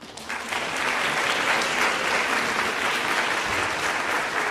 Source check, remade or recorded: recorded